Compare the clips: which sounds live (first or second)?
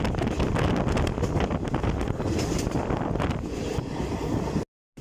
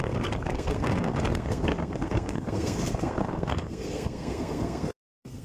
first